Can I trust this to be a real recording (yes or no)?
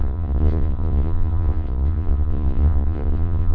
no